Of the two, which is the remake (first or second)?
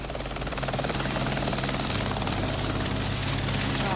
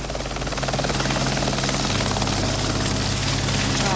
first